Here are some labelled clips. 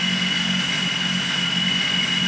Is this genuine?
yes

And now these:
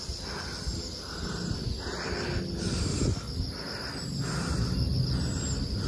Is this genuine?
yes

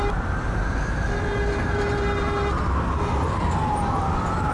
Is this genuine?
yes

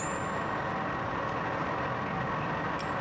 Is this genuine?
yes